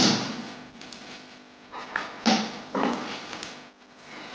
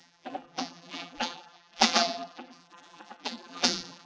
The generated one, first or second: second